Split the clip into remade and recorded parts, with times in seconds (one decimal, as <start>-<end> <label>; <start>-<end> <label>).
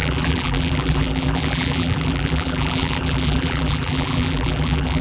0.0-5.0 remade